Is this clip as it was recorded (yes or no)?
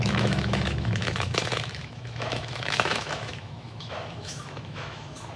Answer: no